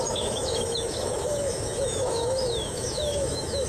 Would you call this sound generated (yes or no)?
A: yes